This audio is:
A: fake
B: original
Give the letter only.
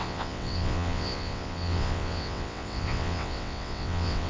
A